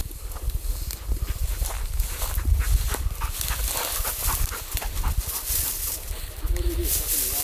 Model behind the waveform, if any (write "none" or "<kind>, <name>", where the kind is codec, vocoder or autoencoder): none